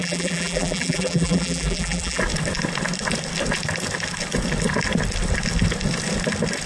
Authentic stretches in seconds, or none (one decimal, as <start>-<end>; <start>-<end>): 2.2-6.7